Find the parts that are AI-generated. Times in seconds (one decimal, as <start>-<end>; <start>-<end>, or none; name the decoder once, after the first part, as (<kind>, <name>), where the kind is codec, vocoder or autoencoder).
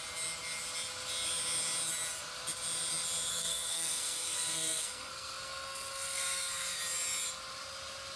3.3-6.8 (codec, SNAC)